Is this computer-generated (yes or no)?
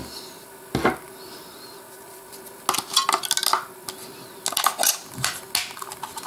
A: no